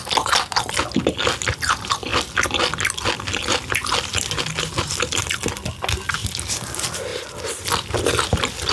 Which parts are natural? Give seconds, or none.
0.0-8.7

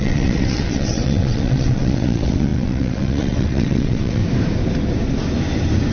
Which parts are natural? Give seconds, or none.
4.2-5.9

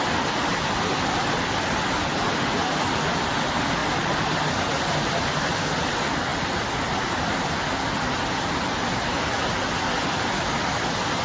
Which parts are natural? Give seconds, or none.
0.0-11.2